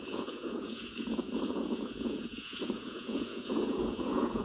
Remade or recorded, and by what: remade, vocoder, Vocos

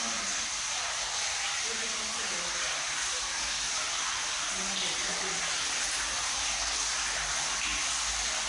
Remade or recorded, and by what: recorded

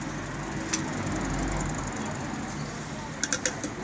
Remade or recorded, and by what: recorded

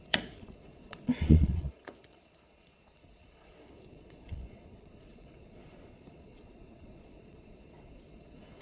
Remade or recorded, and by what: remade, vocoder, Vocos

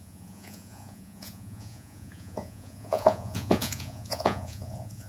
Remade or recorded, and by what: remade, vocoder, Vocos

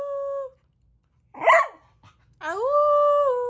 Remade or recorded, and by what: recorded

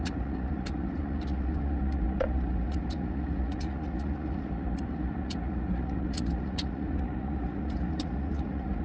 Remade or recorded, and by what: remade, vocoder, Vocos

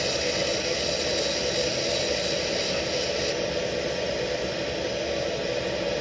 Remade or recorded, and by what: recorded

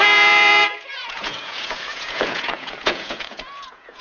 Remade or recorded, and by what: remade, vocoder, Vocos